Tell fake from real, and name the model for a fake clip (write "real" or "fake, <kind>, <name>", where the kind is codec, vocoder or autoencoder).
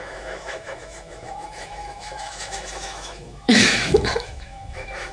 fake, autoencoder, DAC-VAE